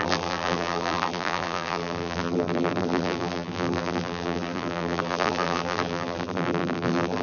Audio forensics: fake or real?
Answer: fake